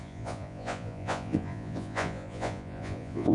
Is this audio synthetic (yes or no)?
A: yes